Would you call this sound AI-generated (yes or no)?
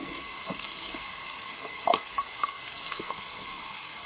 yes